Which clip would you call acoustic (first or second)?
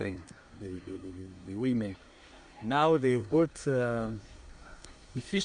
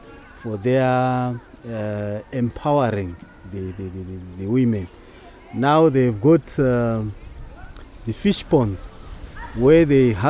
second